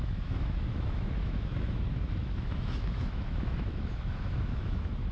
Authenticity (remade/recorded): remade